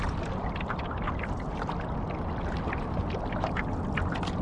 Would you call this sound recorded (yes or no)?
yes